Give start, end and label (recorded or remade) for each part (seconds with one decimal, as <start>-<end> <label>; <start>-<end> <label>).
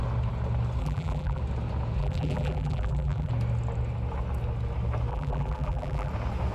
0.0-0.8 recorded; 0.8-1.4 remade; 1.4-2.0 recorded; 2.0-3.3 remade; 3.3-5.1 recorded; 5.1-6.1 remade; 6.1-6.5 recorded